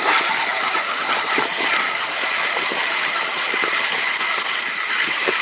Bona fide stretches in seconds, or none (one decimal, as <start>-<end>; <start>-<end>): 0.0-5.4

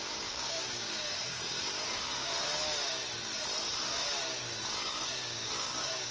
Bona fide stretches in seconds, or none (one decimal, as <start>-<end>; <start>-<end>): 2.3-4.8